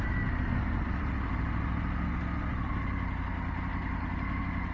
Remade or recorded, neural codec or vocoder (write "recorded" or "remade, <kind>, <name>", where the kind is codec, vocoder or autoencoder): recorded